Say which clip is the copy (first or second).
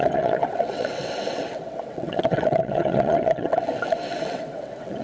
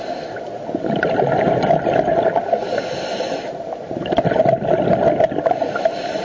first